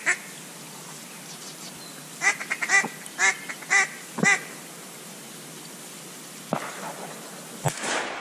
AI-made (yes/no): no